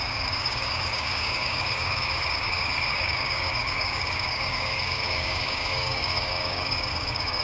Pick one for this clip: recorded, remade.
remade